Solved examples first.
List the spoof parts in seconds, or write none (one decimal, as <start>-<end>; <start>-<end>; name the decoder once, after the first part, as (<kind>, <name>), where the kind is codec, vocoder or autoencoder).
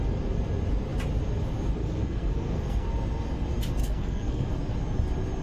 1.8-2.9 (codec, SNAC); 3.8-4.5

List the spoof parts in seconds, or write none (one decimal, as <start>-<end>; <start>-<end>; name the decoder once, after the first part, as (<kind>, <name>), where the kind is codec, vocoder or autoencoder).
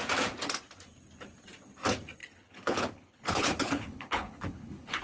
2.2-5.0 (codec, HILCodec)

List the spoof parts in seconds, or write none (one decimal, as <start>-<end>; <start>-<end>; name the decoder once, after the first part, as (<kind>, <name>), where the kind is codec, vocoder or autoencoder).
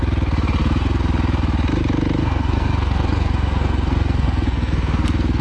2.2-5.4 (codec, SNAC)